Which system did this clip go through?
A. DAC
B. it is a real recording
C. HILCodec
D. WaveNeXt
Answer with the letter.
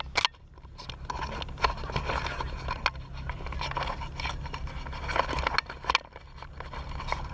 B